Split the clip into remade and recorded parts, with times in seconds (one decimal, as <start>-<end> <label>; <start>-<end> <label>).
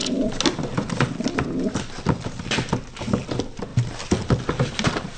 0.0-5.2 recorded